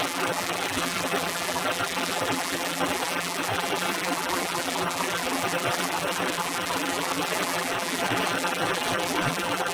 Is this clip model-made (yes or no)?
yes